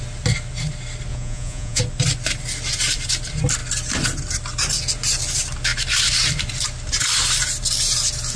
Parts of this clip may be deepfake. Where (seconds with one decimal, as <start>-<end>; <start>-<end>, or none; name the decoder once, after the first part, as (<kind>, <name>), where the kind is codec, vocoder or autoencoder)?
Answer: 1.1-1.8 (vocoder, Vocos)